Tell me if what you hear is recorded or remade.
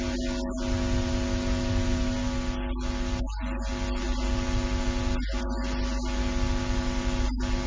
recorded